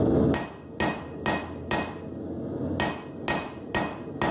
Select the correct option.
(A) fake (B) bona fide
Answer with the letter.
B